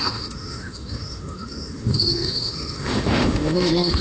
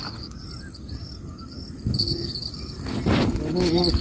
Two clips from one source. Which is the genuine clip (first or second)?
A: second